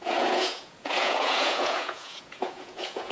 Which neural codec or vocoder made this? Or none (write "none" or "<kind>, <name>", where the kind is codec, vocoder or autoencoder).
vocoder, Vocos